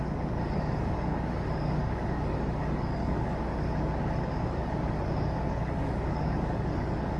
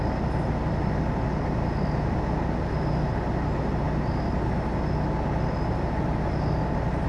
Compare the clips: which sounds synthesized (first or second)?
first